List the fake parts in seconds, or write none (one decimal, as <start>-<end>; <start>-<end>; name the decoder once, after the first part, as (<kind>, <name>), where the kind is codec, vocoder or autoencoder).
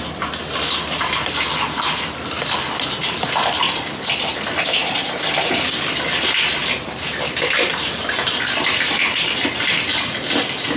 4.8-5.9 (vocoder, BigVGAN v2)